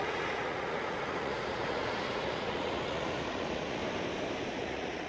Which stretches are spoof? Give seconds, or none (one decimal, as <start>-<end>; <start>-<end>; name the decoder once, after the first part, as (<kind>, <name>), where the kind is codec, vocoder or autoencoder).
0.0-3.8 (vocoder, Vocos); 4.5-5.1